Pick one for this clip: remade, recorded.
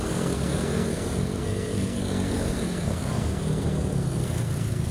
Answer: remade